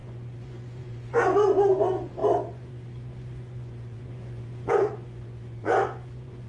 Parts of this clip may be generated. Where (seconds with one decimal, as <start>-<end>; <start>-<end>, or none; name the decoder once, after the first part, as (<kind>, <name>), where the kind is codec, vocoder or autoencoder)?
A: 0.0-6.5 (vocoder, Vocos)